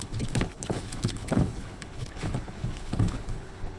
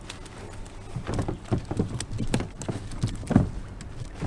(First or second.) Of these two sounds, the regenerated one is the first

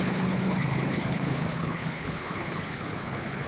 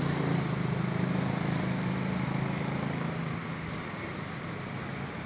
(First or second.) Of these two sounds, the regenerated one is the first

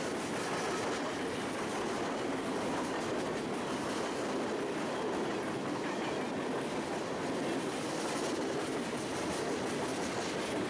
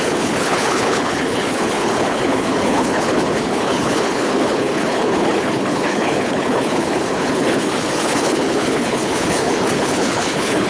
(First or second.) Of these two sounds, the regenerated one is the second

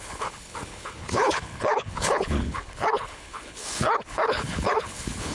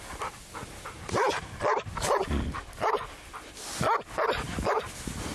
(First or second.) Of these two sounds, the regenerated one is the first